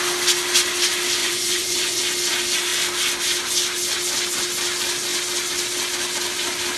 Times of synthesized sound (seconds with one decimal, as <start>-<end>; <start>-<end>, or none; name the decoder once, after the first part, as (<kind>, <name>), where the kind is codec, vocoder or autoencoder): 1.2-2.0 (vocoder, Vocos)